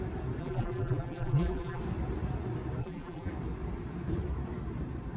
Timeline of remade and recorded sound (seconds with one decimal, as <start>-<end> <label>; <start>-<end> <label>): 0.0-0.4 recorded; 0.4-1.8 remade; 1.8-2.8 recorded; 2.8-3.3 remade; 3.3-5.2 recorded